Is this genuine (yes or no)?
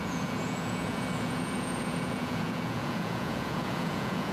no